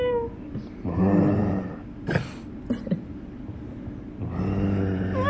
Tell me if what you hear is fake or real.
real